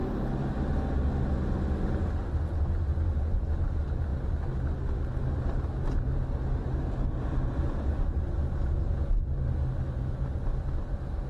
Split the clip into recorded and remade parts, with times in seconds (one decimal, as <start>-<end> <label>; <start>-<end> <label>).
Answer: 0.0-11.3 recorded